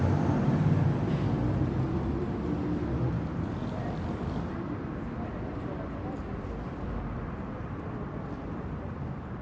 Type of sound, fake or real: fake